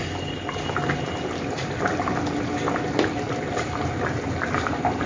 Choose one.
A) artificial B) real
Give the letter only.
B